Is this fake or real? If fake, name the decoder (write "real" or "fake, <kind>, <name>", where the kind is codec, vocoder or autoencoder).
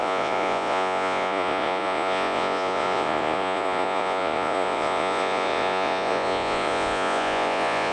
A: fake, vocoder, Vocos